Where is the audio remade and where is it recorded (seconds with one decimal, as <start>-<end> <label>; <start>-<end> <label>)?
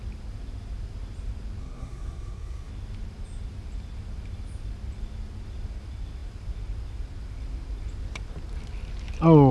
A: 0.0-1.6 recorded; 1.6-2.7 remade; 2.7-9.5 recorded